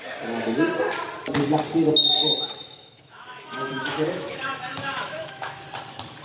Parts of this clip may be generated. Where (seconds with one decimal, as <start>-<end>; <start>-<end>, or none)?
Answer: 2.2-5.6